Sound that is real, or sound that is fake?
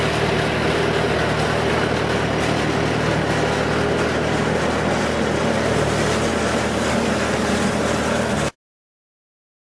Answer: real